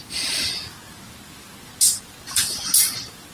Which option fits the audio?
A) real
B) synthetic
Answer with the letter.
A